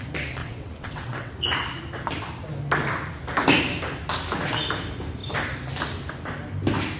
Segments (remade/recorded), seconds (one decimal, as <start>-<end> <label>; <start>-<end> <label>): 0.0-0.4 recorded; 0.4-1.3 remade; 1.3-7.0 recorded